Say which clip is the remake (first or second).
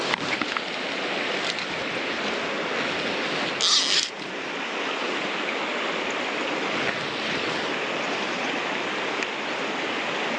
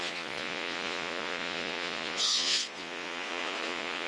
second